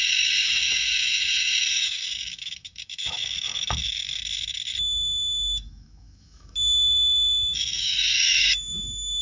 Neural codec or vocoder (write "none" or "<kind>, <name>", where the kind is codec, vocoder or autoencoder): autoencoder, DAC-VAE